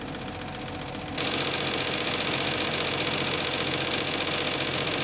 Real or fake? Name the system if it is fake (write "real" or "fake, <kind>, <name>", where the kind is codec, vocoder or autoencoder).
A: real